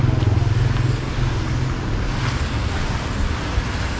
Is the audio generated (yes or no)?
no